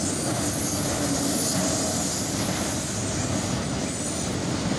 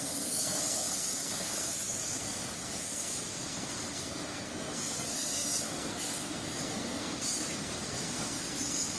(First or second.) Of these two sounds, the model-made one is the second